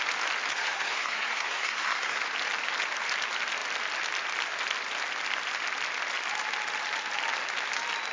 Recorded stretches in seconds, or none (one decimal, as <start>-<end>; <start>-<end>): 0.0-0.5; 2.2-8.1